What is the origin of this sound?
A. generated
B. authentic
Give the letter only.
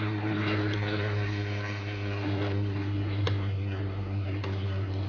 A